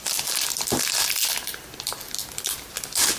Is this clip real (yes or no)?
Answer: yes